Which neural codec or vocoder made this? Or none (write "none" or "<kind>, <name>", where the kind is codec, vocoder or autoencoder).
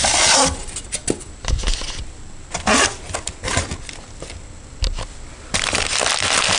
none